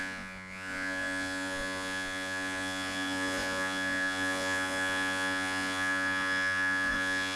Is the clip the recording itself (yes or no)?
no